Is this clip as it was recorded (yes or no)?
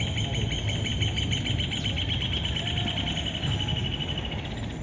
yes